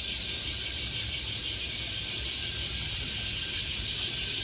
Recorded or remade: recorded